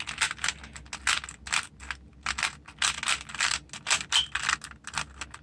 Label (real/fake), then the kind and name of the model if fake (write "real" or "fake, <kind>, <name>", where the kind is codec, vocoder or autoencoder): real